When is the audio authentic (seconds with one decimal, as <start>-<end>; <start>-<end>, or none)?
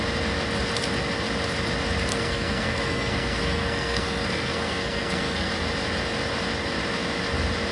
0.0-2.1; 5.5-7.7